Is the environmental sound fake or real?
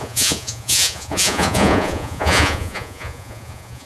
fake